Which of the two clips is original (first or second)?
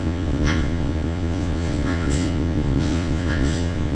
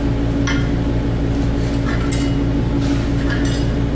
second